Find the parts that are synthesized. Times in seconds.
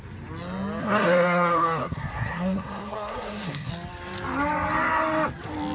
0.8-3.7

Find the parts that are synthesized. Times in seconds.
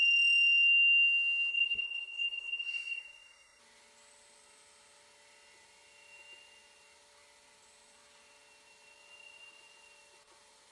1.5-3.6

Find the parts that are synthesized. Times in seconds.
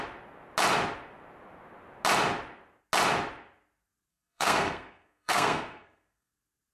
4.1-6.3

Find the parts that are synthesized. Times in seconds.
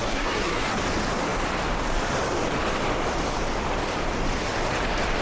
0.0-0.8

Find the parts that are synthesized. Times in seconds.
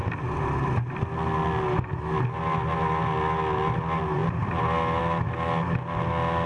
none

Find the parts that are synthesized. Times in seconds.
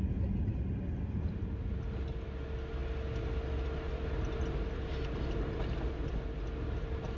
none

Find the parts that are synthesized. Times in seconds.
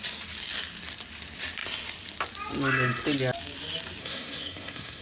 4.0-5.0